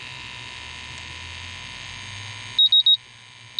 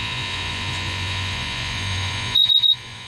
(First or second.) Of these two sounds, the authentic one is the first